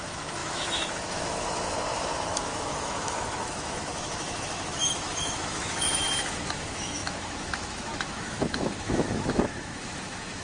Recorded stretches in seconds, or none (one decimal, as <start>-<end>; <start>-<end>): none